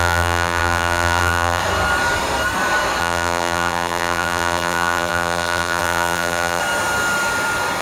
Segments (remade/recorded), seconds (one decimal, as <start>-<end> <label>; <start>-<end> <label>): 0.0-1.6 remade; 1.6-3.0 recorded; 3.0-6.6 remade; 6.6-7.8 recorded